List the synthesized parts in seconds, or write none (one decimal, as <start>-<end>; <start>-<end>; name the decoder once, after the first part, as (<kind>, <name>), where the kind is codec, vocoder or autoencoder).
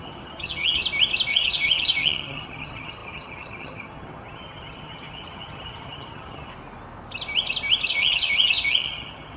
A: 0.0-0.8 (vocoder, HiFi-GAN); 1.3-6.5; 7.9-9.4